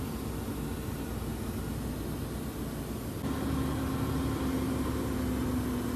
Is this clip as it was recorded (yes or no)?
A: yes